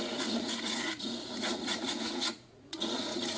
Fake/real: fake